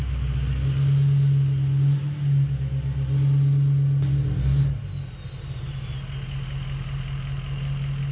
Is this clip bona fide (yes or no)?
yes